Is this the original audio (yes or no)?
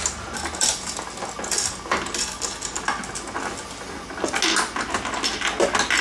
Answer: yes